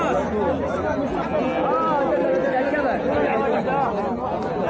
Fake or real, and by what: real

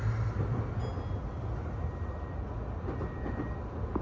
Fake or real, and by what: real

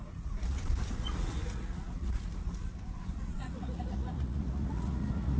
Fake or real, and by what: fake, vocoder, Vocos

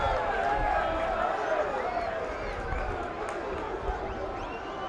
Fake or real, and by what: real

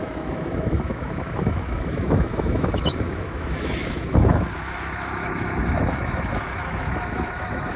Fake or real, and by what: fake, autoencoder, DAC-VAE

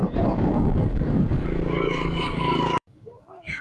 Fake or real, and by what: fake, codec, DAC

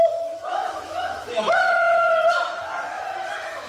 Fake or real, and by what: fake, autoencoder, DAC-VAE